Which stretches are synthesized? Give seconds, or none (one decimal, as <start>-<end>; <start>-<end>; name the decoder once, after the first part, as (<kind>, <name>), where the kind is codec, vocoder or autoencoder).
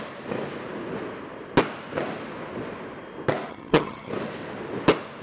3.5-4.1 (vocoder, HiFi-GAN)